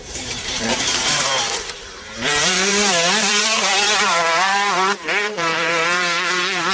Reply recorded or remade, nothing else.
remade